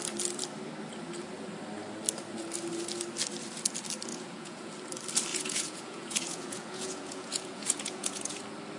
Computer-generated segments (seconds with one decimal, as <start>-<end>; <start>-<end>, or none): 4.1-4.7; 5.3-8.4